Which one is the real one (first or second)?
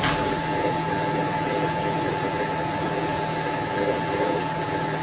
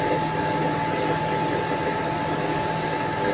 second